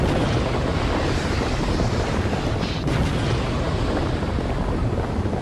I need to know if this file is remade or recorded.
recorded